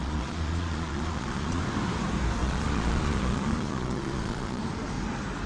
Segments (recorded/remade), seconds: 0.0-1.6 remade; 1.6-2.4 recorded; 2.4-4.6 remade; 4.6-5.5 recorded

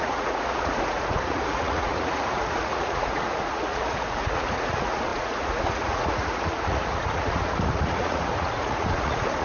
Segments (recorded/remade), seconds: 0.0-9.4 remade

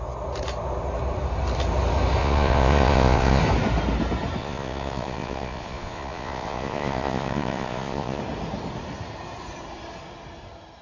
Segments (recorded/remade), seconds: 0.0-2.2 recorded; 2.2-3.4 remade; 3.4-4.4 recorded; 4.4-8.2 remade; 8.2-10.8 recorded

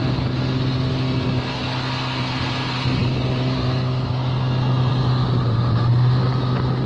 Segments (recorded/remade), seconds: 0.0-6.9 recorded